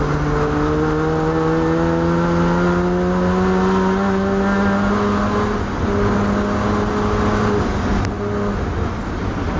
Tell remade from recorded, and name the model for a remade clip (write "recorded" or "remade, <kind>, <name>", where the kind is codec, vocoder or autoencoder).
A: recorded